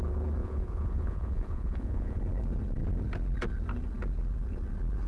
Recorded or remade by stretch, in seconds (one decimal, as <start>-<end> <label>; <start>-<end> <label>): 0.0-0.4 recorded; 0.4-2.2 remade; 2.2-5.1 recorded

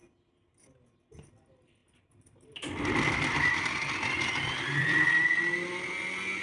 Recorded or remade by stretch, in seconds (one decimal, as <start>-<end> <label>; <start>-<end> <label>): 0.0-1.8 recorded; 1.8-5.4 remade; 5.4-6.4 recorded

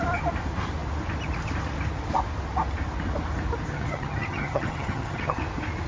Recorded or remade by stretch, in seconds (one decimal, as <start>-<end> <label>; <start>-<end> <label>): 0.0-3.7 recorded; 3.7-5.4 remade; 5.4-5.9 recorded

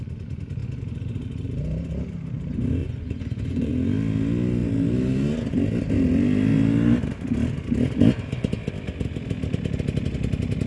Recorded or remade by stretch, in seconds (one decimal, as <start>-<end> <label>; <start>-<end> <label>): 0.0-2.8 recorded; 2.8-3.7 remade; 3.7-10.7 recorded